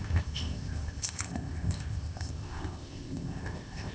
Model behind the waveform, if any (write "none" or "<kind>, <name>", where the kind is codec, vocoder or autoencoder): codec, ZipCodec